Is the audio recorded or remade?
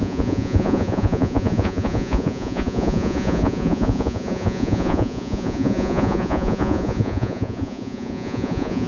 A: remade